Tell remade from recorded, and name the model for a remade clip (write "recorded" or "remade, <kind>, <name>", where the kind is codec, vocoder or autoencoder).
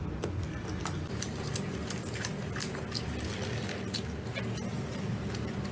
recorded